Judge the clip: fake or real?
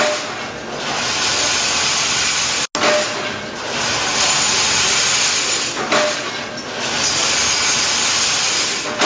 real